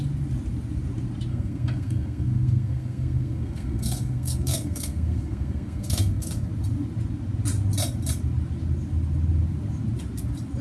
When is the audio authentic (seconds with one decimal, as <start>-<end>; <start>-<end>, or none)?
0.0-1.3; 6.5-10.6